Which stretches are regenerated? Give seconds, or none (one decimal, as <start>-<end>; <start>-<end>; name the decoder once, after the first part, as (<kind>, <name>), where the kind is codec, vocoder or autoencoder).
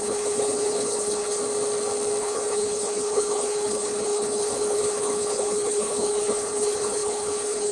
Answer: 0.0-1.4 (codec, HILCodec); 2.2-7.7